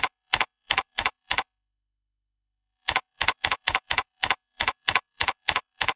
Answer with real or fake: fake